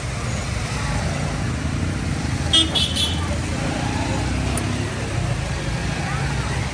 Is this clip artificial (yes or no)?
no